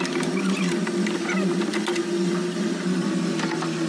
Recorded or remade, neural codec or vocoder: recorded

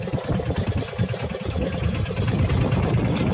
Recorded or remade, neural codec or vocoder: recorded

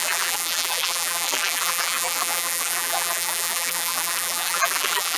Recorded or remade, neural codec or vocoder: remade, vocoder, BigVGAN v2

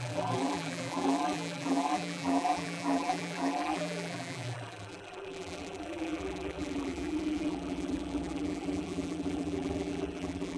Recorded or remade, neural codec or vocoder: remade, vocoder, BigVGAN v2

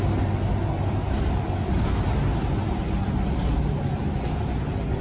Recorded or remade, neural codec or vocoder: recorded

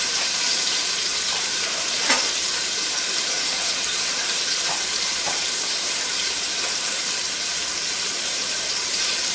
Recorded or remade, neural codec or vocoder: remade, vocoder, BigVGAN v2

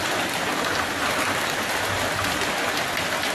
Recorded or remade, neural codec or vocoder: recorded